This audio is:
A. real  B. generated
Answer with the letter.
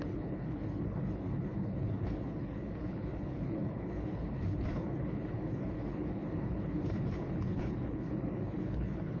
B